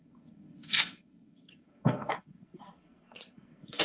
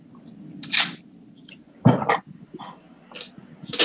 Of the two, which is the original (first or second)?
second